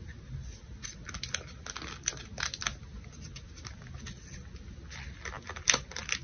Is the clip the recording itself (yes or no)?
yes